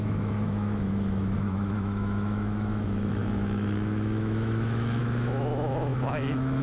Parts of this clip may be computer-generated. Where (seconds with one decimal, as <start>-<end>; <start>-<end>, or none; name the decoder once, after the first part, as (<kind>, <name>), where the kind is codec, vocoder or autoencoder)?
0.0-6.6 (autoencoder, DAC-VAE)